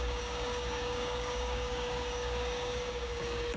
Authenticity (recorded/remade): remade